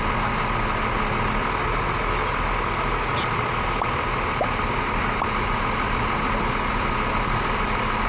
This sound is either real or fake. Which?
real